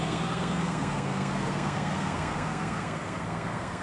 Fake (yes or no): yes